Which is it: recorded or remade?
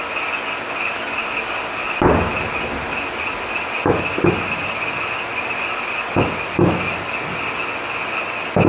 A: recorded